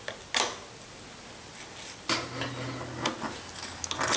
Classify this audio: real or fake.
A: real